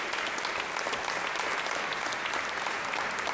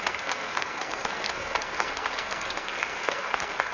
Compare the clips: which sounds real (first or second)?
first